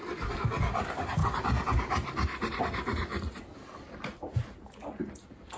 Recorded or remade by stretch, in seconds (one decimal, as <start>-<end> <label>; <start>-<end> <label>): 0.0-5.6 recorded